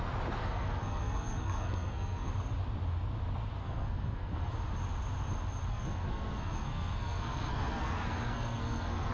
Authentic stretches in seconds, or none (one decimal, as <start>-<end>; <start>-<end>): 0.0-0.4; 2.3-3.6; 4.5-5.7